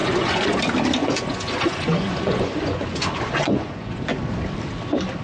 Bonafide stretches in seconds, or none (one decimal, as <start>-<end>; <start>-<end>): 0.6-1.0; 4.0-5.2